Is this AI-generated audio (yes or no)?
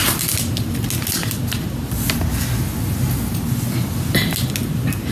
no